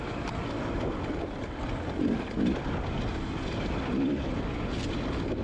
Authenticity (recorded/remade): recorded